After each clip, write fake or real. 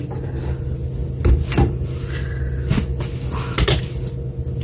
real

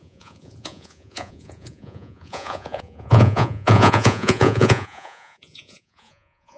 fake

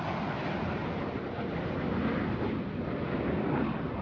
real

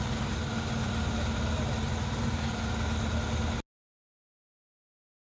real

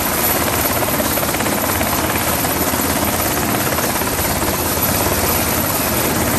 real